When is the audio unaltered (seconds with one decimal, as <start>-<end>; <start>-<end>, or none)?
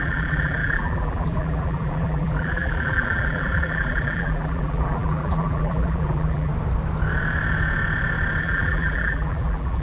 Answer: 6.5-8.4